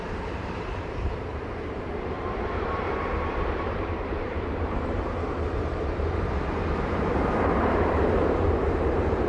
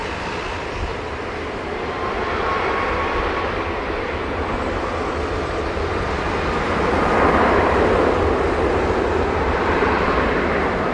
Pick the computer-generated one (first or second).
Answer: first